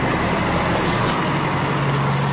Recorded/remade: recorded